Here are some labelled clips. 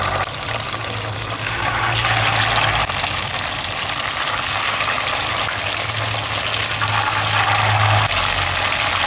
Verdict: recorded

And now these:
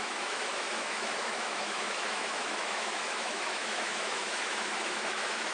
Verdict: remade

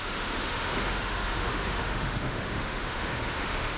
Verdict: remade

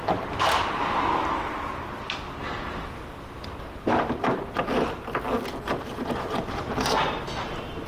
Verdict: recorded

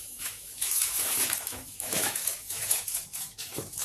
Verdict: remade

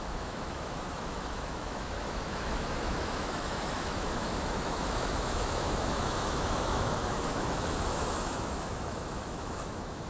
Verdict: remade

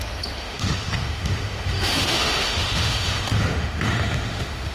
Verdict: remade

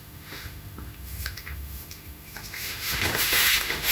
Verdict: remade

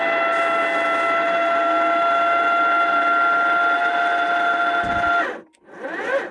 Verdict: recorded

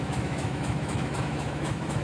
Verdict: remade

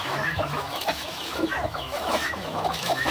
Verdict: remade